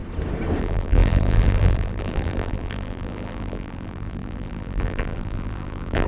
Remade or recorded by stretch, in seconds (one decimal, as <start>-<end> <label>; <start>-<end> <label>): 0.0-0.6 recorded; 0.6-6.1 remade